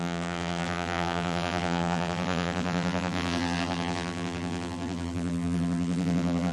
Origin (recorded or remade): remade